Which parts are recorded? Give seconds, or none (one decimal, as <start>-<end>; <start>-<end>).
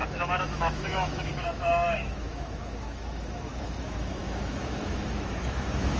none